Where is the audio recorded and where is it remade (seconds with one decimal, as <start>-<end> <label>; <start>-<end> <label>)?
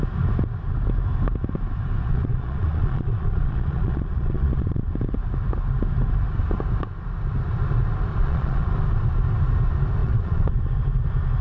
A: 0.0-2.1 recorded; 2.1-4.9 remade; 4.9-8.1 recorded; 8.1-8.7 remade; 8.7-10.0 recorded; 10.0-10.6 remade; 10.6-11.4 recorded